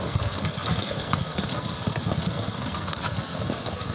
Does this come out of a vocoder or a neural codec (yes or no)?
yes